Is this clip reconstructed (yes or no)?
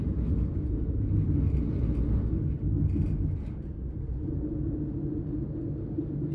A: no